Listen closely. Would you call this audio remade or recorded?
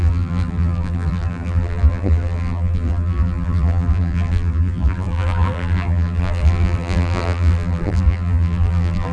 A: remade